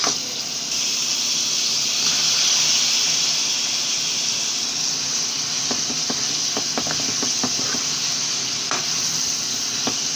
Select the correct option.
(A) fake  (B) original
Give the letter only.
B